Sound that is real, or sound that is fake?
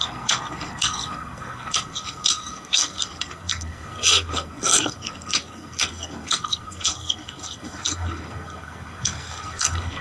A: fake